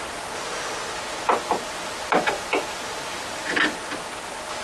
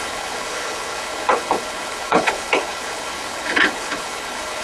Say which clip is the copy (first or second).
second